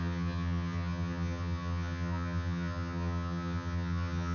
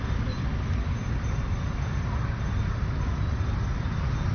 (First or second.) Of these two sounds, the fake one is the first